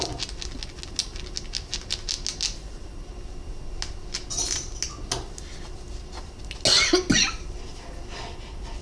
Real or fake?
real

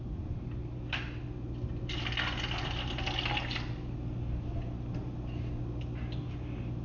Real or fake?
real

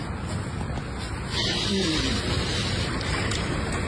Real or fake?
real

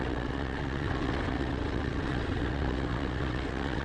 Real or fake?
fake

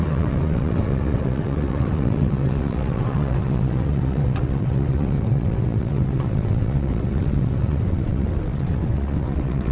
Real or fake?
fake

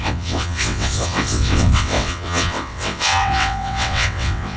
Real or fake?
fake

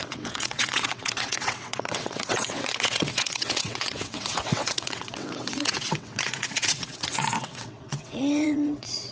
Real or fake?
fake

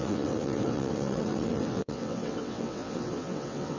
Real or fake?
fake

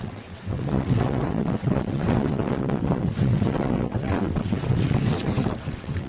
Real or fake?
fake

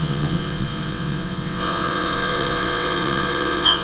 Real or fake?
fake